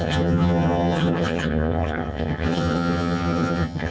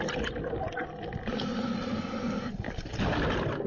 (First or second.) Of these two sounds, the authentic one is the second